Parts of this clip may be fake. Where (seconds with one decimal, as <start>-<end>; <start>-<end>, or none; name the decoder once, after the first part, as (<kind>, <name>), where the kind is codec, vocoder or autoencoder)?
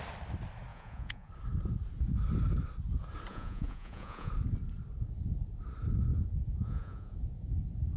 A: 0.7-1.3 (vocoder, Vocos); 3.3-4.3; 6.1-7.6